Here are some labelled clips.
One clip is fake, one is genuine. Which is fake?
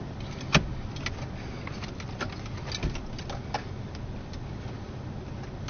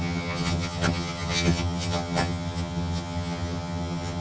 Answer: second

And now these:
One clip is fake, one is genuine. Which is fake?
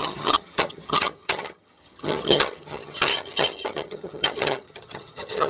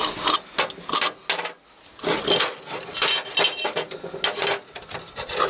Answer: first